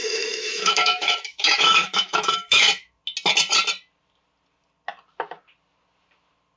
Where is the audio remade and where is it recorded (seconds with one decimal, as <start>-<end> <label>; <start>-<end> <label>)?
0.0-3.0 remade; 3.0-6.6 recorded